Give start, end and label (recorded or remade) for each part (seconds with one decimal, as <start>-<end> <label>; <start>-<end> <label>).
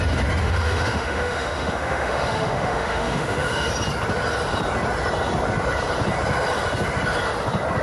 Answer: 0.0-0.4 recorded; 0.4-3.7 remade; 3.7-7.8 recorded